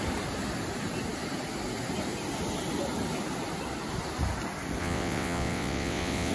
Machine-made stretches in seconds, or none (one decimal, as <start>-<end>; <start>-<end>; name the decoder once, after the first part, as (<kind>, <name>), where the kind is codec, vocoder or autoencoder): 4.8-6.3 (vocoder, WaveNeXt)